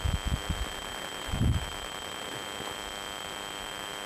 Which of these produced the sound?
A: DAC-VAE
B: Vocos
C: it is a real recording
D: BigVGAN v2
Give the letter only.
C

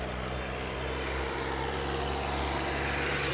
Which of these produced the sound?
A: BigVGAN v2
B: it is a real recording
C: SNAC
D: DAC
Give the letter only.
B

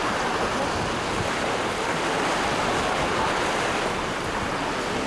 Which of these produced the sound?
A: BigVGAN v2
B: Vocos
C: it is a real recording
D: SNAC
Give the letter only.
C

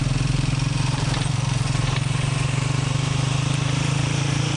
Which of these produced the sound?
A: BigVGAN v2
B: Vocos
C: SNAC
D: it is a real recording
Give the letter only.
A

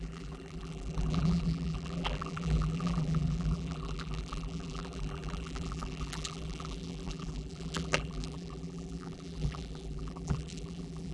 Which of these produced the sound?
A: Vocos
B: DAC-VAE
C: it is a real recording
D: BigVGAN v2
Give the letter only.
D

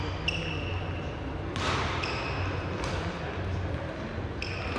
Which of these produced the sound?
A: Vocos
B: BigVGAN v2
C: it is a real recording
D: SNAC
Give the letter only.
C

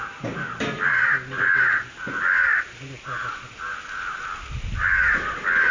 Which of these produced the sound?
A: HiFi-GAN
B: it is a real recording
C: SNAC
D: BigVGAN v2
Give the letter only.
B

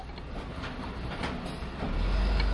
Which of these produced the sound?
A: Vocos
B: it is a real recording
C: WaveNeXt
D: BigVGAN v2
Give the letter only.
B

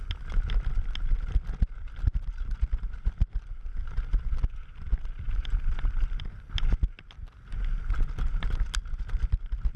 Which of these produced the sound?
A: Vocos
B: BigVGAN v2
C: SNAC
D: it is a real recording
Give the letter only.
D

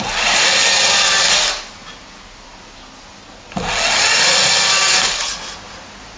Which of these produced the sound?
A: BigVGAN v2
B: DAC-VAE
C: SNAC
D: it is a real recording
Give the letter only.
D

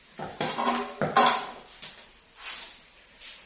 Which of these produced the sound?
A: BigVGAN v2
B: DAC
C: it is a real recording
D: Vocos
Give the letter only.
C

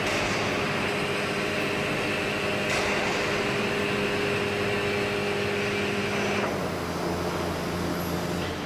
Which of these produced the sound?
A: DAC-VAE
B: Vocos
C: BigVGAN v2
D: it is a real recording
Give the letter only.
D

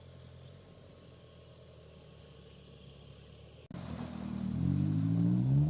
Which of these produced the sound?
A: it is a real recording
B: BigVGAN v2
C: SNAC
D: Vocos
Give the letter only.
A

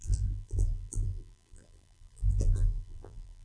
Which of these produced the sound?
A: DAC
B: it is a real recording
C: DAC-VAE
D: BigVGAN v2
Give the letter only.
D